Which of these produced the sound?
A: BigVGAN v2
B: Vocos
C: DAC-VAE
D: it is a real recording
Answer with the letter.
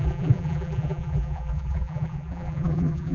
A